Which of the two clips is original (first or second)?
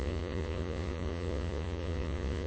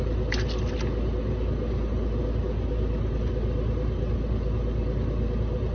second